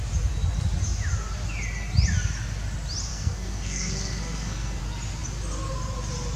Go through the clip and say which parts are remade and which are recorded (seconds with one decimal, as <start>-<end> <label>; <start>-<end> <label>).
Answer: 0.0-3.1 recorded; 3.1-4.8 remade; 4.8-6.4 recorded